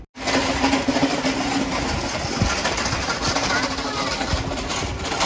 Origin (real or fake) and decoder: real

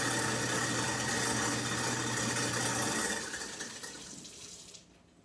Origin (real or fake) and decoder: real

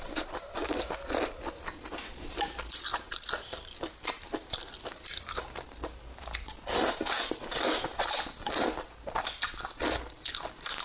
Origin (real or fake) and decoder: real